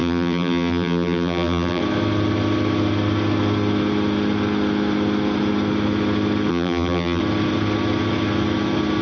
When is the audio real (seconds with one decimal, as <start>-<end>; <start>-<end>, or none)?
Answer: 1.8-6.5; 7.2-9.0